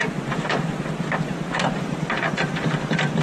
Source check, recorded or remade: recorded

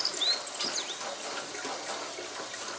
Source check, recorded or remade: recorded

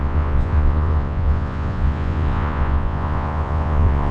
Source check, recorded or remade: remade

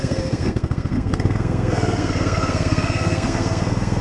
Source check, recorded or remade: remade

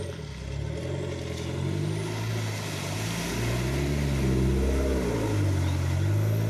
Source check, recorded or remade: recorded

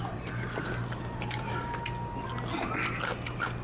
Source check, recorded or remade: recorded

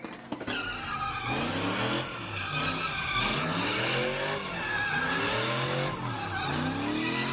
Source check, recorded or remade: recorded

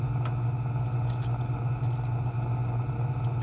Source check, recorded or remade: recorded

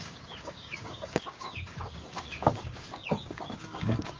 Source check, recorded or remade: remade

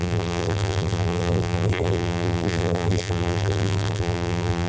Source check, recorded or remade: remade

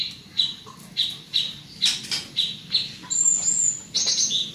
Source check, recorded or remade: recorded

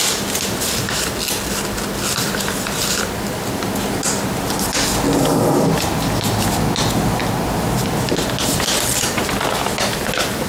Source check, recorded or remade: recorded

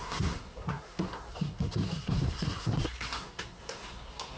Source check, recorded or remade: remade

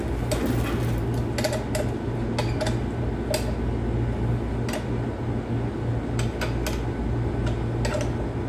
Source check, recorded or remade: recorded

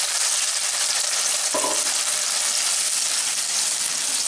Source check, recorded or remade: recorded